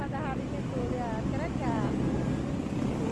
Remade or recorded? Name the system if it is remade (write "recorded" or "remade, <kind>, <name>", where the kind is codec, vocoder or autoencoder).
recorded